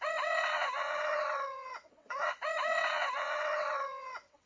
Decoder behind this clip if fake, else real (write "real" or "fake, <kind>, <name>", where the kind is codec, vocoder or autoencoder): fake, vocoder, WaveNeXt